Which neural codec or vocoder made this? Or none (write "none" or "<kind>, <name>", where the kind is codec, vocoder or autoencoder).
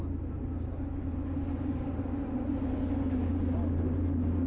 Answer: none